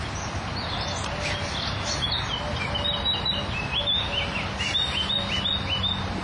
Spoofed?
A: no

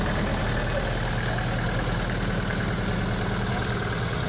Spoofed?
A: no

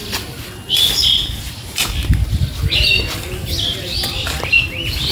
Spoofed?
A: no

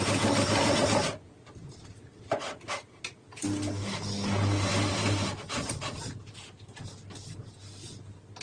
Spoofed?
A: no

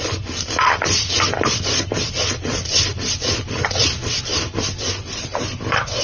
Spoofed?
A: no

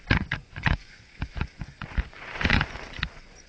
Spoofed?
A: yes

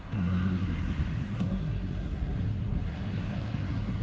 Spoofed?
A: yes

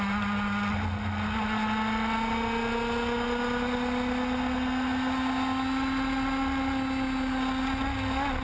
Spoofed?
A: no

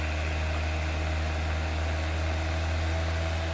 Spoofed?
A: no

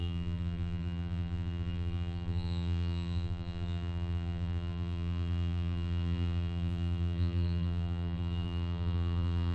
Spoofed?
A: yes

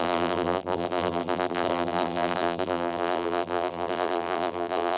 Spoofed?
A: yes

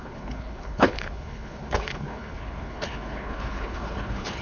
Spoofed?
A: yes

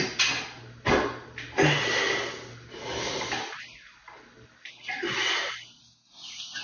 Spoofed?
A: no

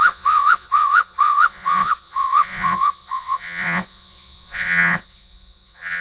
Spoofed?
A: yes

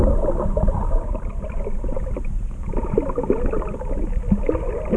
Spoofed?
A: no